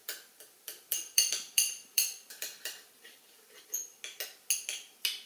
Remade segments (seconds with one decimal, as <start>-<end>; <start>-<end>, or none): 0.0-3.2